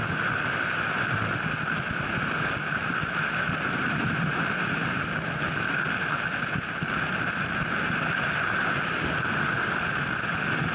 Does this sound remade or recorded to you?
recorded